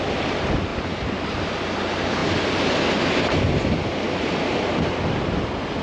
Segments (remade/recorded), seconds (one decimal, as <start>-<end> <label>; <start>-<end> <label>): 0.0-5.8 recorded